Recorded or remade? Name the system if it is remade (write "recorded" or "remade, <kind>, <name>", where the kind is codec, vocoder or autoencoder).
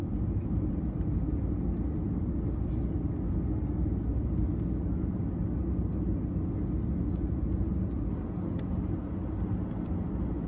recorded